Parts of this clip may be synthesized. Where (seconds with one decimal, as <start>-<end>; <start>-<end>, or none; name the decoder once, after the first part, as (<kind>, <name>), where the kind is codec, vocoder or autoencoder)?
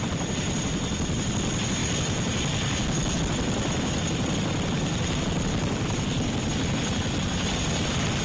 none